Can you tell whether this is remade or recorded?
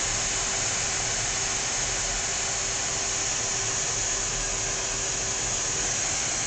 recorded